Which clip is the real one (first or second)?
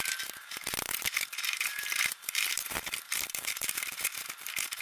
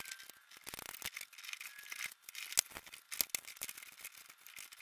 second